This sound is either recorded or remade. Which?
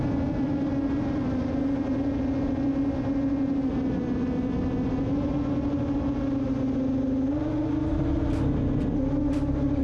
recorded